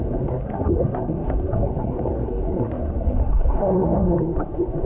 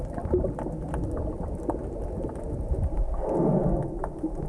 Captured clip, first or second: second